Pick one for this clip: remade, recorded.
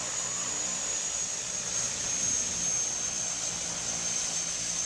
recorded